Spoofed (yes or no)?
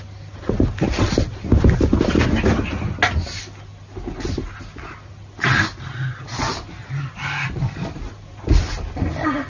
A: no